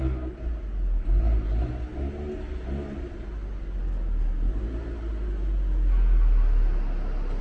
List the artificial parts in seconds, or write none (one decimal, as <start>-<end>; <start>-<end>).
none